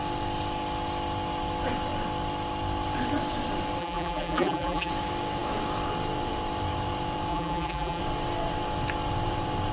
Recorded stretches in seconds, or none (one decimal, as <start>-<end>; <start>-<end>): 0.0-3.8; 4.9-7.3; 8.0-9.7